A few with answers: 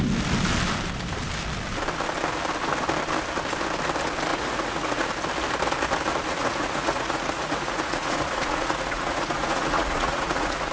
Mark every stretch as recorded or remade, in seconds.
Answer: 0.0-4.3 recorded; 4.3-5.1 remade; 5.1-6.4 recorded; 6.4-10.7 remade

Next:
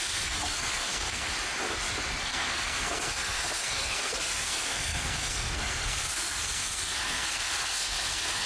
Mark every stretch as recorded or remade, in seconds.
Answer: 0.0-1.3 remade; 1.3-2.2 recorded; 2.2-8.5 remade

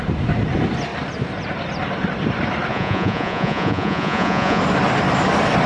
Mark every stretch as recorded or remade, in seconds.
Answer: 0.0-2.7 recorded; 2.7-4.6 remade; 4.6-5.7 recorded

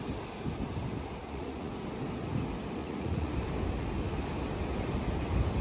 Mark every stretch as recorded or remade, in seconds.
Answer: 0.0-1.2 recorded; 1.2-1.7 remade; 1.7-2.8 recorded; 2.8-3.3 remade; 3.3-5.6 recorded